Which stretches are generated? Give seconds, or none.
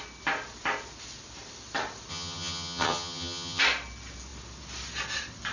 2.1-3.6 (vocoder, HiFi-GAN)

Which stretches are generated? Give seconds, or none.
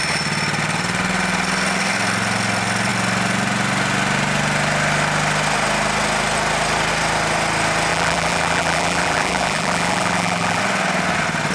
7.9-10.6 (vocoder, BigVGAN v2)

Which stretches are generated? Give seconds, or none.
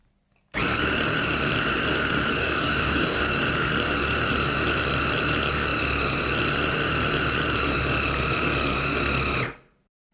2.4-3.2 (codec, DAC)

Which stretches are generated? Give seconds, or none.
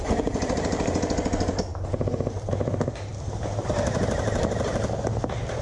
none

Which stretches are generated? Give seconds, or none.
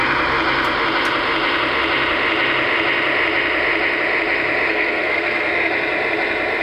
4.7-5.7 (codec, SNAC)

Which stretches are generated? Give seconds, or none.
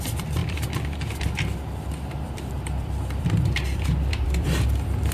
0.0-5.1 (vocoder, BigVGAN v2)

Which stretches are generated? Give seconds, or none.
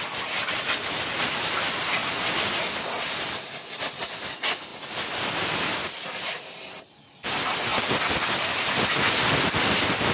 7.7-8.8 (vocoder, BigVGAN v2)